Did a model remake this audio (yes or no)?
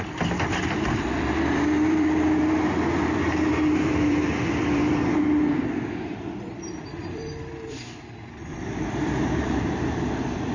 yes